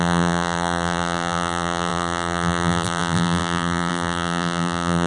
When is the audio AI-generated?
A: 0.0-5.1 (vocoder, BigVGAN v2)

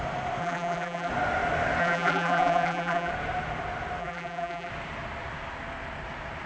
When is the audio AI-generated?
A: 0.4-1.1 (vocoder, BigVGAN v2); 1.8-3.1; 4.0-4.7